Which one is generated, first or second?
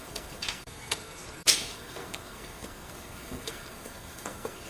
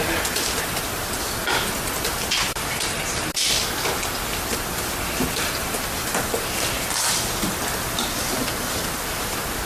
first